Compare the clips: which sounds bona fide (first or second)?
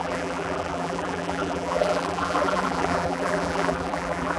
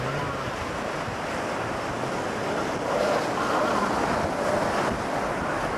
second